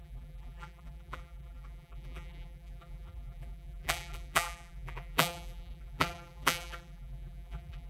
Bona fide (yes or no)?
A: no